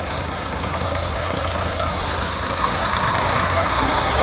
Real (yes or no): no